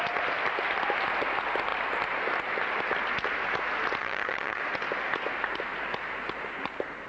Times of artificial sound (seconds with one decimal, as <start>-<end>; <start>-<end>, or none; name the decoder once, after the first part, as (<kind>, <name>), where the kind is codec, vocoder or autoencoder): 4.0-4.6 (vocoder, HiFi-GAN)